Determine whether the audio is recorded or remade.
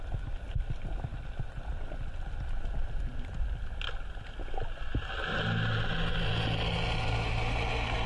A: recorded